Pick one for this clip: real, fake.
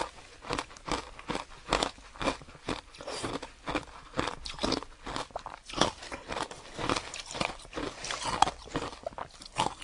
real